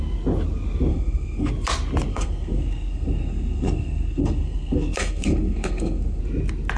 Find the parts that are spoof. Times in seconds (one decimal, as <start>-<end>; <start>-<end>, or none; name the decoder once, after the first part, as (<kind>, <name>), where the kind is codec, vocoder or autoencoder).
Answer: 0.9-1.5 (codec, SNAC); 2.1-6.2